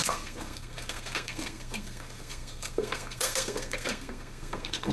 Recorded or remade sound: remade